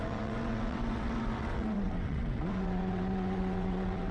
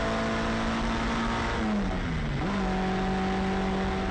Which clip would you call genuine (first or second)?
second